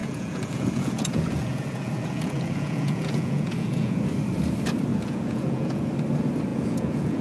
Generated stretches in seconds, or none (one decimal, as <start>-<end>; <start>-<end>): 0.0-4.0; 4.9-5.9; 6.5-7.2